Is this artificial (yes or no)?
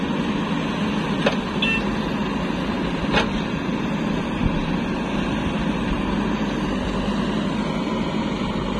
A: no